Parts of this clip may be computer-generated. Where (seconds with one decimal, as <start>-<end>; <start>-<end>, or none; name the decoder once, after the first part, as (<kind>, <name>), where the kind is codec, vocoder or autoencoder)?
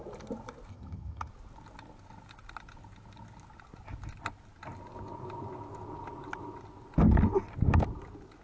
0.7-1.3 (vocoder, HiFi-GAN)